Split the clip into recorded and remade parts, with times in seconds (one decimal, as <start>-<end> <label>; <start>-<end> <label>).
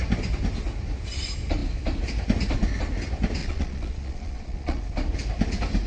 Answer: 0.0-3.4 recorded; 3.4-4.8 remade; 4.8-5.9 recorded